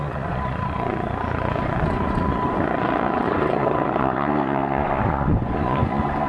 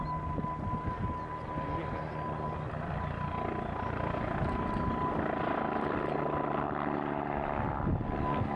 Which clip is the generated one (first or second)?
first